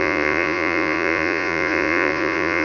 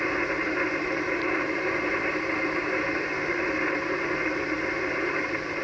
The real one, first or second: second